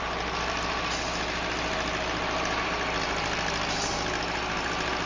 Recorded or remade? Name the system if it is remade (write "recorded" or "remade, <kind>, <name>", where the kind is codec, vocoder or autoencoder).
recorded